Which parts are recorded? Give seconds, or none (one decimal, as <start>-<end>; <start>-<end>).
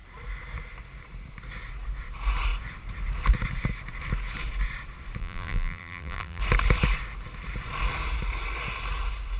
0.0-5.2; 6.4-9.4